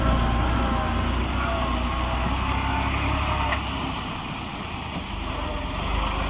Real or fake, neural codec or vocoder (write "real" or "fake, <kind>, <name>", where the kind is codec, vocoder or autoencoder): real